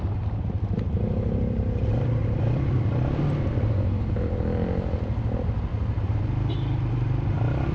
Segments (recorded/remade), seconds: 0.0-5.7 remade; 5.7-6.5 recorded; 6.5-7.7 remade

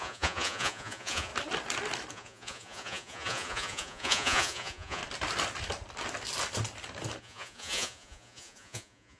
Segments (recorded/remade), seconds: 0.0-1.3 remade; 1.3-2.1 recorded; 2.1-5.0 remade; 5.0-7.2 recorded; 7.2-9.2 remade

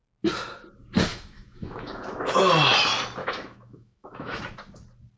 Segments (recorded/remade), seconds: 0.0-1.1 recorded; 1.1-2.4 remade; 2.4-3.2 recorded; 3.2-4.4 remade; 4.4-5.2 recorded

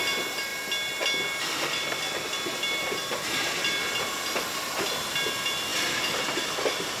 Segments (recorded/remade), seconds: 0.0-7.0 recorded

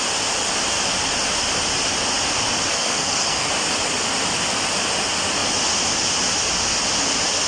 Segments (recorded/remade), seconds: 0.0-2.7 recorded; 2.7-3.5 remade; 3.5-7.5 recorded

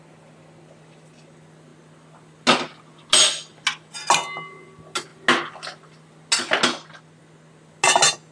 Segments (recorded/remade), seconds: 0.0-8.3 recorded

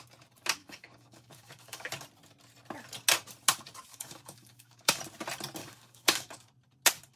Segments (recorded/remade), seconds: 0.0-0.6 recorded; 0.6-1.9 remade; 1.9-3.9 recorded; 3.9-5.0 remade; 5.0-5.6 recorded; 5.6-6.5 remade; 6.5-7.2 recorded